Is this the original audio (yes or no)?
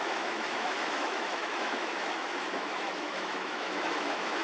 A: no